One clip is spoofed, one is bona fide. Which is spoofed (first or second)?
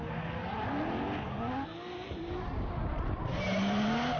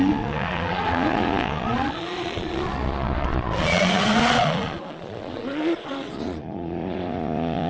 second